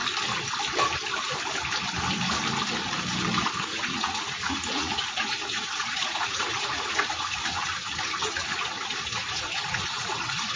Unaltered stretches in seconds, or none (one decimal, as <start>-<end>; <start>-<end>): 0.0-3.6

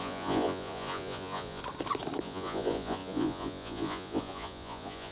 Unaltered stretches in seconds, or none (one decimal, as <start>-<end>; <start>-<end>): 1.6-2.2

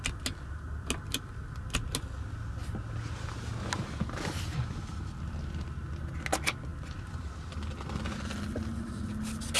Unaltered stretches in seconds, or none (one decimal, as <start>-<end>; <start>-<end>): 0.0-9.6

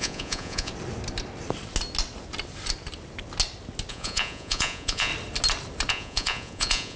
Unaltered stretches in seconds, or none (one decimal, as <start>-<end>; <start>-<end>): 0.7-3.9; 5.1-5.9

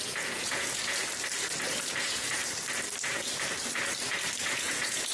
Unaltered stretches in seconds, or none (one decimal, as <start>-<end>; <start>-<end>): 1.0-2.0; 2.4-4.4